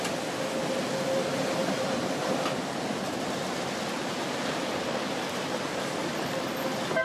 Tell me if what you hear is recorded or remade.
recorded